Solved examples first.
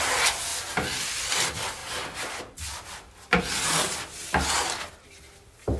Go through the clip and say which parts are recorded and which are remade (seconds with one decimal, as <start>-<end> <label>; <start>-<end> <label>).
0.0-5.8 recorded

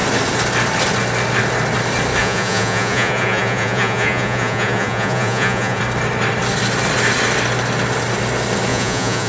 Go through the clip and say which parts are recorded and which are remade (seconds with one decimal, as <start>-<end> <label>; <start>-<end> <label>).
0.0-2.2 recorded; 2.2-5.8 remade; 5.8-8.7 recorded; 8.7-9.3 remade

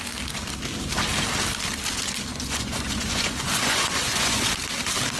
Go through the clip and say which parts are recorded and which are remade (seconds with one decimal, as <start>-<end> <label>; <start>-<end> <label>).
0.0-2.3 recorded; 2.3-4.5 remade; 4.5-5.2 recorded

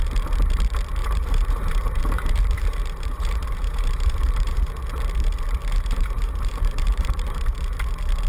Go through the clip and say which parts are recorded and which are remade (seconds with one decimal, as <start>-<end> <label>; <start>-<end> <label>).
0.0-1.0 recorded; 1.0-4.8 remade; 4.8-5.6 recorded; 5.6-7.4 remade; 7.4-8.3 recorded

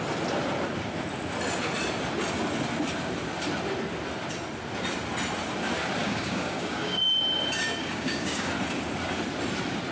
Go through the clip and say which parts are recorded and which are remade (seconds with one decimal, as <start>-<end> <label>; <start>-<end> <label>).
0.0-6.0 recorded; 6.0-7.0 remade; 7.0-7.8 recorded; 7.8-8.5 remade; 8.5-9.9 recorded